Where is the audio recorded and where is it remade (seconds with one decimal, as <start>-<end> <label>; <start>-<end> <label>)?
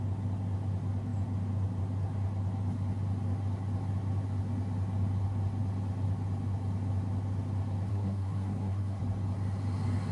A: 0.0-7.9 recorded; 7.9-9.0 remade; 9.0-10.1 recorded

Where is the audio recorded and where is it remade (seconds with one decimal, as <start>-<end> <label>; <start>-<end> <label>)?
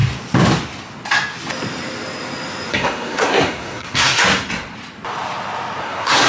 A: 0.0-2.7 recorded; 2.7-4.2 remade; 4.2-5.8 recorded; 5.8-6.3 remade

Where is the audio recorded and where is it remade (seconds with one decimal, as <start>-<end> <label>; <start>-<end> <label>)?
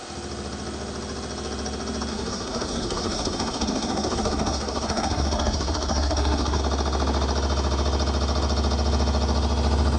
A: 0.0-2.1 recorded; 2.1-6.6 remade; 6.6-10.0 recorded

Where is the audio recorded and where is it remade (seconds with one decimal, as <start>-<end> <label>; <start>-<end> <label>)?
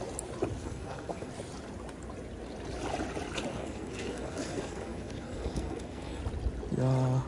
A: 0.0-0.6 recorded; 0.6-1.3 remade; 1.3-3.5 recorded; 3.5-6.2 remade; 6.2-7.3 recorded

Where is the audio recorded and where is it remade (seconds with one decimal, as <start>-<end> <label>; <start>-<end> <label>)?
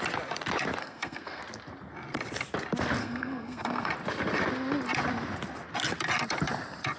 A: 0.0-0.8 recorded; 0.8-1.4 remade; 1.4-3.0 recorded; 3.0-3.9 remade; 3.9-7.0 recorded